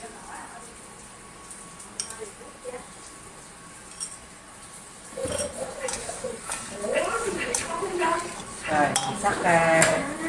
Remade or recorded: recorded